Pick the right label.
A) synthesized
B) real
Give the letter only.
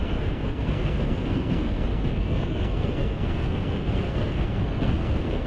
A